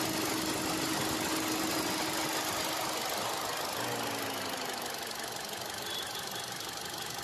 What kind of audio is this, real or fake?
real